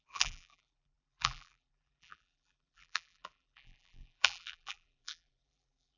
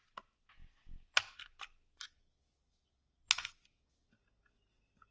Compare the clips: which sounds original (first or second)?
second